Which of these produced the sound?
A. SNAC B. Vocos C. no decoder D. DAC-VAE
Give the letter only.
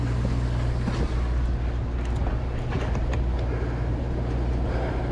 C